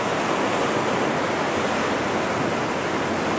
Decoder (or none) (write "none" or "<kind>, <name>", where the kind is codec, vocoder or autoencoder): none